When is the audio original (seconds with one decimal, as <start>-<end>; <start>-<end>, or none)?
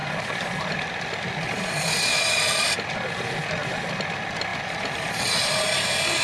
3.7-4.5; 5.3-6.2